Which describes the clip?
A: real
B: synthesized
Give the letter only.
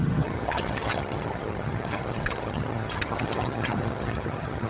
B